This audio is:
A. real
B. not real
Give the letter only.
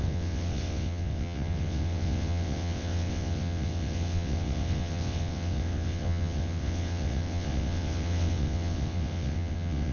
B